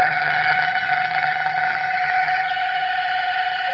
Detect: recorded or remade remade